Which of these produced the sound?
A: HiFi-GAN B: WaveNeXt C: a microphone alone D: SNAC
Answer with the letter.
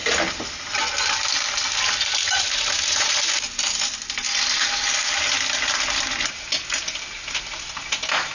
C